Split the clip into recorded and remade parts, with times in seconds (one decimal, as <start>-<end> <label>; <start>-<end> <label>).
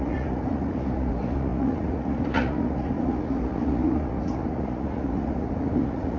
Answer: 0.0-6.2 remade